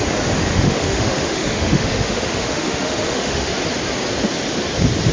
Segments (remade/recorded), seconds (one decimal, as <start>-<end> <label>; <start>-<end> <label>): 0.0-0.5 recorded; 0.5-3.5 remade; 3.5-5.1 recorded